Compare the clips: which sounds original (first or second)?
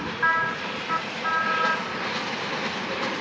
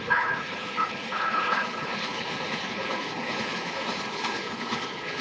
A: first